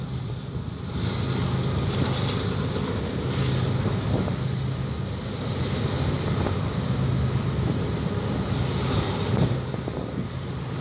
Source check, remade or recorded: recorded